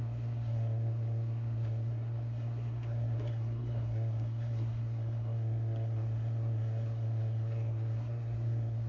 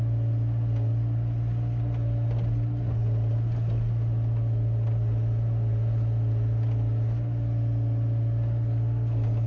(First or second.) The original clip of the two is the second